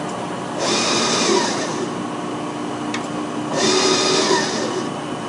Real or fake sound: real